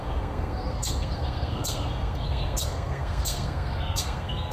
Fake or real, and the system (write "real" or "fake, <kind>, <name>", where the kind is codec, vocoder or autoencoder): fake, codec, SNAC